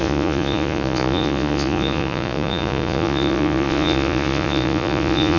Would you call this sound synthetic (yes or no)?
yes